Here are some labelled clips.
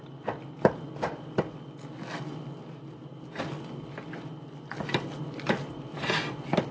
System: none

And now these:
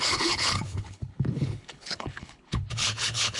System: codec, HILCodec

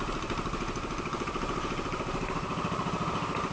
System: vocoder, BigVGAN v2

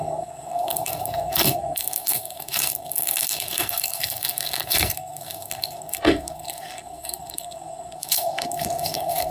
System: codec, SNAC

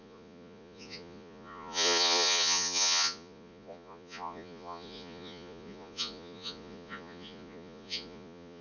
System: vocoder, Vocos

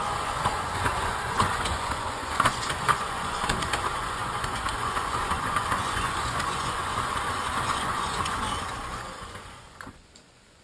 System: vocoder, Vocos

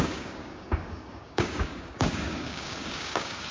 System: codec, DAC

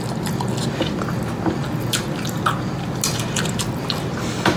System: none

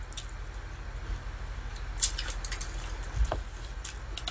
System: none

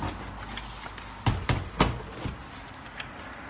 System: none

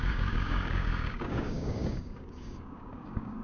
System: codec, DAC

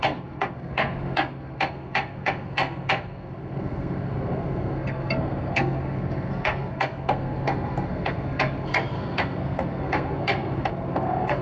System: codec, SNAC